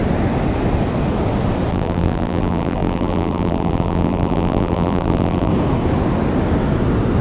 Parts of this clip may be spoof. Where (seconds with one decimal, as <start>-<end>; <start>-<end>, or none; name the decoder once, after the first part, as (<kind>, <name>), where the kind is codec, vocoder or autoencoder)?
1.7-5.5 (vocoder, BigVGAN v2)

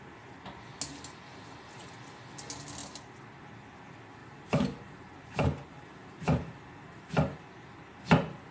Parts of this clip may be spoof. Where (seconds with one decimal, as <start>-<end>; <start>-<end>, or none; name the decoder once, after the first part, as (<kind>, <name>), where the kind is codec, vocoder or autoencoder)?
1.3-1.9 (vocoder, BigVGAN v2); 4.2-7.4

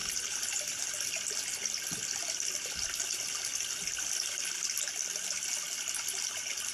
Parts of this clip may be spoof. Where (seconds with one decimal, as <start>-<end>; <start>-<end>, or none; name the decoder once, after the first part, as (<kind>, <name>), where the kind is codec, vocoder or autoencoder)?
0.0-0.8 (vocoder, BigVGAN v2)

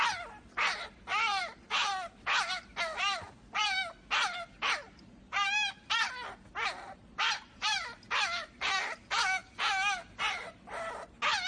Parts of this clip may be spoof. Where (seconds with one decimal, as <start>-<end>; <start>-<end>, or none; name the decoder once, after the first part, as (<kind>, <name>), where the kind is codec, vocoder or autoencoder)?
0.0-9.4 (vocoder, BigVGAN v2); 10.5-11.5

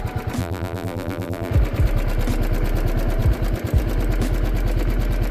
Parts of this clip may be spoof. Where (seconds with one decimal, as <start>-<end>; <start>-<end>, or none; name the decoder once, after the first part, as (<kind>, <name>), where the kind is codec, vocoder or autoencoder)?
0.4-1.5 (vocoder, BigVGAN v2)

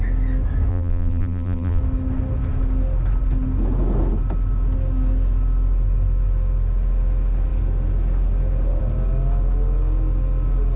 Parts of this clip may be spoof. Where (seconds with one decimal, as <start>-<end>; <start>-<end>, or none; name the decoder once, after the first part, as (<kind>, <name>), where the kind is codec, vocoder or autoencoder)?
0.7-1.8 (vocoder, BigVGAN v2)